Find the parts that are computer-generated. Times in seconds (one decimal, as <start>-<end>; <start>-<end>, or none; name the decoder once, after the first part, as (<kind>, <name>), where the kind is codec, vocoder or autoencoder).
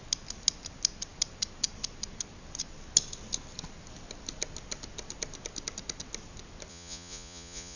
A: 6.7-7.8 (vocoder, Vocos)